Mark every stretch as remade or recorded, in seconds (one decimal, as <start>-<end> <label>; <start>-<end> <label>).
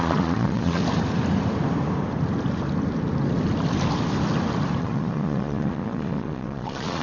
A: 0.0-0.8 remade; 0.8-4.8 recorded; 4.8-7.0 remade